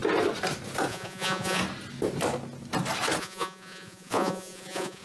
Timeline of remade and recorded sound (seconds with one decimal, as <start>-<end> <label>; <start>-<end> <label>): 0.0-0.9 recorded; 0.9-1.6 remade; 1.6-3.2 recorded; 3.2-5.0 remade